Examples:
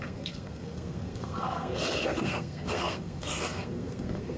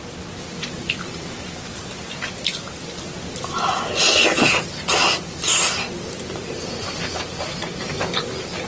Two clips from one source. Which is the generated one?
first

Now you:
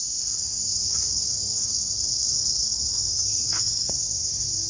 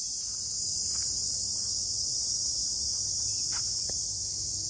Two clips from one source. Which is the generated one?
first